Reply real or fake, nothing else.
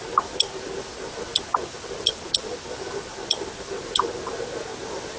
real